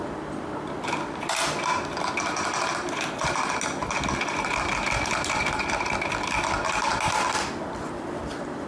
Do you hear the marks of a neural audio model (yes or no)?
no